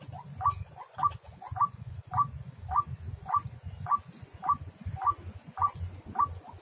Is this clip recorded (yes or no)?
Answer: no